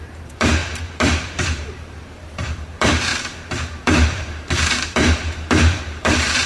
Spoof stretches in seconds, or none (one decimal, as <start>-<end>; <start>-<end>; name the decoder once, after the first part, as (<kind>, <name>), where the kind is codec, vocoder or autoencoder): 0.0-6.5 (vocoder, BigVGAN v2)